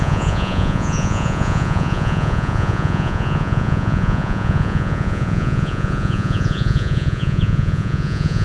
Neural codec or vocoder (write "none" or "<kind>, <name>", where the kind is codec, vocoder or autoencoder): vocoder, Vocos